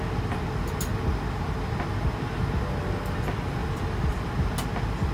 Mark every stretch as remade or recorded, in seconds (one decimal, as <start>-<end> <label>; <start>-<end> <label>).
0.0-5.1 recorded